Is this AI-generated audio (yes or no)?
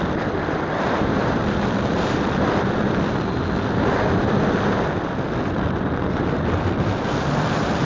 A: yes